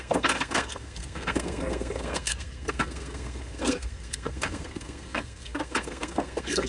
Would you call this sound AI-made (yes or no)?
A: yes